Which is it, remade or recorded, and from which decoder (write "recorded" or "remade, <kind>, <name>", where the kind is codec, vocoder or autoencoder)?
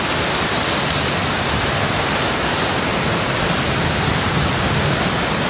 recorded